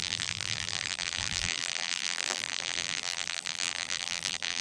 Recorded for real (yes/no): no